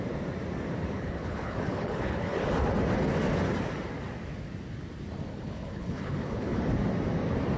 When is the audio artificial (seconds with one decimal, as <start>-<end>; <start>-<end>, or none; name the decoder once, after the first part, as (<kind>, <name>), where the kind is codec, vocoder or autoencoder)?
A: 0.8-2.5 (codec, HILCodec); 5.3-6.6